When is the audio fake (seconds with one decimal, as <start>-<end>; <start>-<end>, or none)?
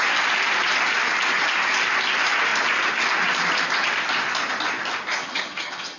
5.1-6.0